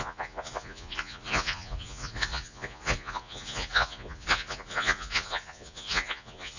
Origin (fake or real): fake